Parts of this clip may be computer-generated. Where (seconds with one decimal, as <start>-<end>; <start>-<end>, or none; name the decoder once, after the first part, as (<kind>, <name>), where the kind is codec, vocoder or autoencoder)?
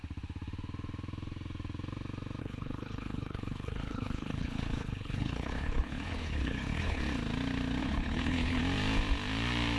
2.4-7.0 (codec, HILCodec); 7.8-8.6